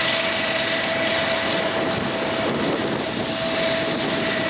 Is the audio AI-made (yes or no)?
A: no